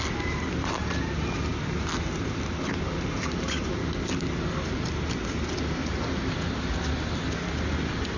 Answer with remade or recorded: recorded